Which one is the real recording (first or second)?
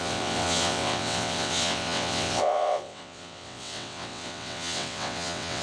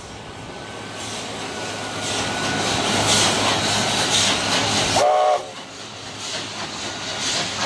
second